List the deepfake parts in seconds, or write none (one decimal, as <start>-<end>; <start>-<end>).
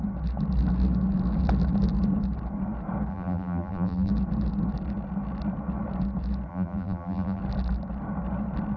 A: 3.1-4.1; 6.5-7.4